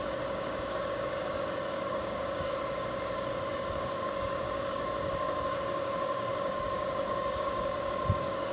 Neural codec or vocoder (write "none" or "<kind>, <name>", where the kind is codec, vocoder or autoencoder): codec, DAC